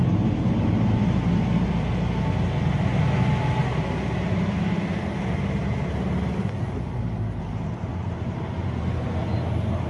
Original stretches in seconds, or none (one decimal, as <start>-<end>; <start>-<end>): 0.0-7.9; 9.1-9.9